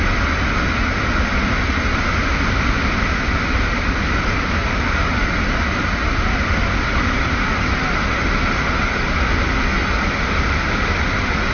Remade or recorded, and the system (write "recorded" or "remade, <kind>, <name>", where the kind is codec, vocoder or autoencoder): recorded